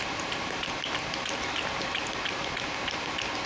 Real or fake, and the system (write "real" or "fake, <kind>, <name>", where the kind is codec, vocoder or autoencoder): real